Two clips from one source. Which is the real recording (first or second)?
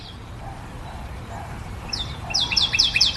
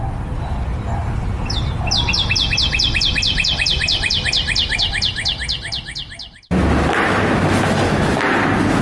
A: second